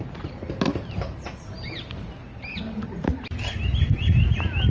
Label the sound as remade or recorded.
recorded